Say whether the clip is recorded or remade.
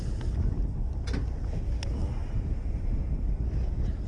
recorded